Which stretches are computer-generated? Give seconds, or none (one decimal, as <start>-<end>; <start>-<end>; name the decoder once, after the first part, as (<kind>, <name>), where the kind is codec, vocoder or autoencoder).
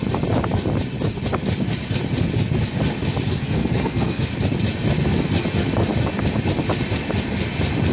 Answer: 3.3-4.3 (codec, SNAC)